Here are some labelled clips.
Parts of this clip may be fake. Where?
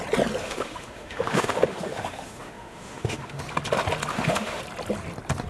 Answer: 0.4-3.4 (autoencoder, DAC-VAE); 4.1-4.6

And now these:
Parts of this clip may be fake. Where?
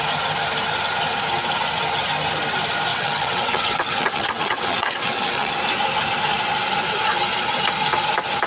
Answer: 2.9-5.5 (vocoder, WaveNeXt)